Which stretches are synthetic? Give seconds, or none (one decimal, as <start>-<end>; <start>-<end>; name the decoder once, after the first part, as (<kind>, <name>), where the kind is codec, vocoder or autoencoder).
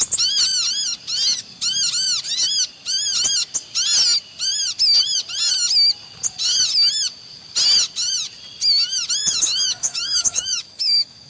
9.2-11.3 (autoencoder, DAC-VAE)